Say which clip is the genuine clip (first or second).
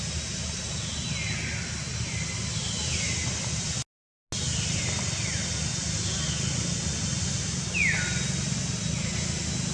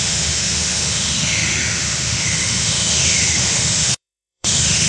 first